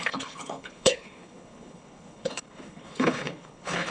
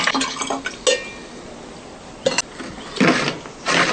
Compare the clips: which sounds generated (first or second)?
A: first